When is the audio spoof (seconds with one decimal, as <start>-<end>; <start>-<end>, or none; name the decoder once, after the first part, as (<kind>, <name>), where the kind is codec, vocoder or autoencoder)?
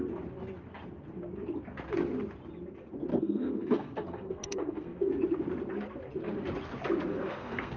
3.1-5.1 (codec, SNAC); 7.1-7.8